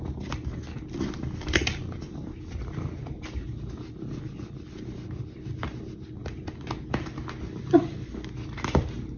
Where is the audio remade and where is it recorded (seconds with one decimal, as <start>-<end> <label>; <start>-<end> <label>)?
0.0-9.2 recorded